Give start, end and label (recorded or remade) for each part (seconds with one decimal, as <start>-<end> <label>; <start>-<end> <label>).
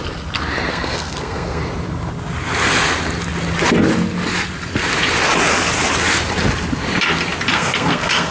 0.0-0.7 recorded; 0.7-1.6 remade; 1.6-7.5 recorded; 7.5-8.3 remade